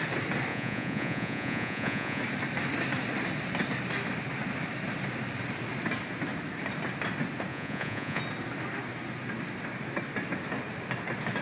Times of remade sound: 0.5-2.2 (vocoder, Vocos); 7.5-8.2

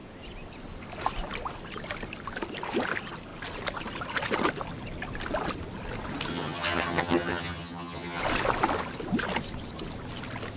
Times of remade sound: 6.3-8.2 (vocoder, HiFi-GAN)